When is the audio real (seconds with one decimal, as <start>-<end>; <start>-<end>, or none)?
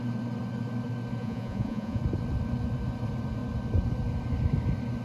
0.0-1.2; 2.0-5.0